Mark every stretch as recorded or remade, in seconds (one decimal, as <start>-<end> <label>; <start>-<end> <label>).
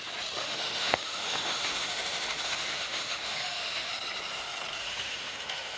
0.0-0.4 recorded; 0.4-3.9 remade; 3.9-4.8 recorded; 4.8-5.8 remade